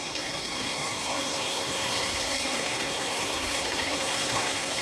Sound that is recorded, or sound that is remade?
remade